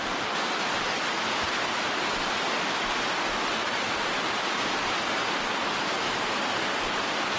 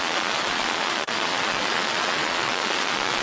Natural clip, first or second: first